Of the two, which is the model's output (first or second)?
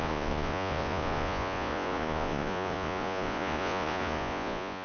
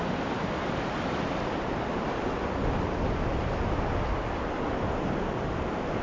first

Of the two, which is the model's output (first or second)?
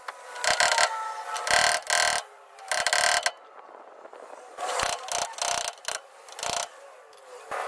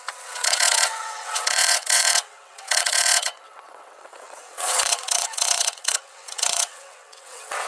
second